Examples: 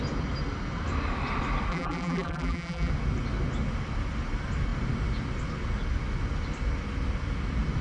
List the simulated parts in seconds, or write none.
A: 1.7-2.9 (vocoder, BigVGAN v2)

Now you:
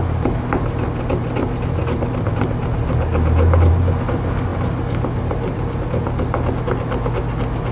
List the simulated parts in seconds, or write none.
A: none

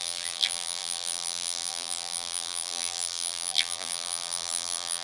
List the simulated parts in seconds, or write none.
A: 0.0-5.0 (vocoder, BigVGAN v2)